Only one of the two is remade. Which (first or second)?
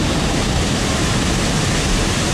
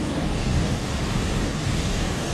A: second